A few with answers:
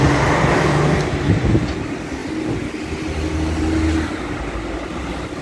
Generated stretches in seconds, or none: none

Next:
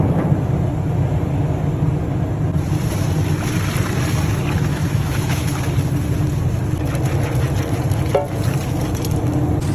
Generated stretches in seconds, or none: 4.7-5.5

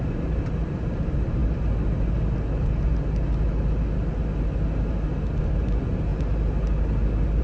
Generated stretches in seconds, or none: none